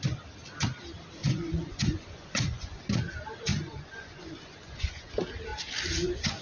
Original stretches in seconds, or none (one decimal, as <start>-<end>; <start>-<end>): 0.0-1.2; 2.9-3.5; 5.1-6.4